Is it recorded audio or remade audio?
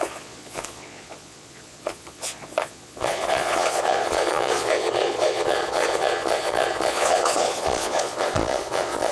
remade